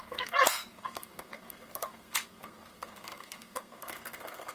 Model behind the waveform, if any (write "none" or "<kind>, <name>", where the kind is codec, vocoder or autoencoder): codec, SNAC